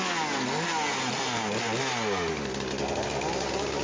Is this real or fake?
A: real